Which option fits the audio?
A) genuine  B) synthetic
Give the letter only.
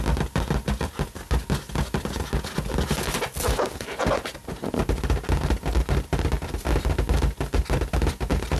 A